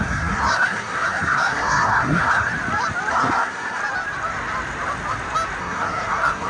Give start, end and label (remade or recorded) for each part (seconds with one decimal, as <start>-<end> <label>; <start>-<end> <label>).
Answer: 0.0-2.5 remade; 2.5-3.1 recorded; 3.1-3.8 remade; 3.8-5.6 recorded; 5.6-6.5 remade